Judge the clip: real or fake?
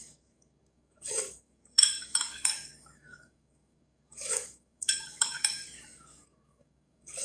fake